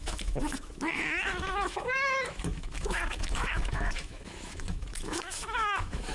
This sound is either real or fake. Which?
fake